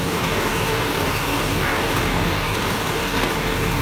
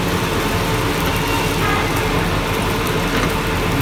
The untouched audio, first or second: second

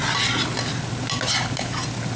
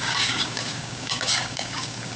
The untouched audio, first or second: first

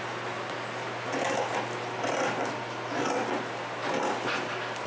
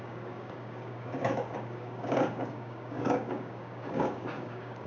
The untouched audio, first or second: first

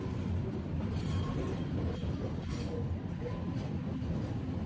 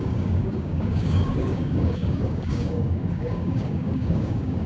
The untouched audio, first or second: first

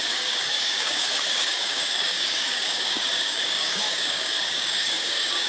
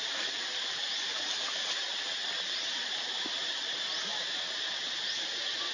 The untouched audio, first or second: second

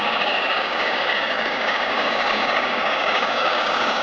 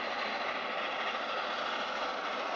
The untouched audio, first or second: second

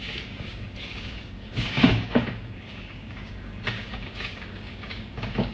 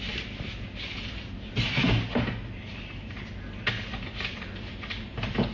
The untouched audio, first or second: second